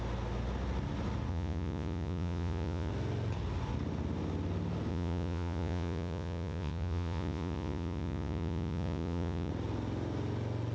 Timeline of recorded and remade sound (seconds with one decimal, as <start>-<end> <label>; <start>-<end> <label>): 0.0-1.3 recorded; 1.3-2.9 remade; 2.9-4.9 recorded; 4.9-9.5 remade; 9.5-10.7 recorded